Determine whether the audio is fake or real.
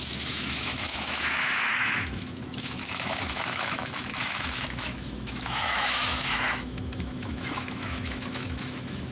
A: fake